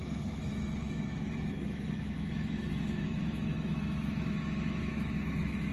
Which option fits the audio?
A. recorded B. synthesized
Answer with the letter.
B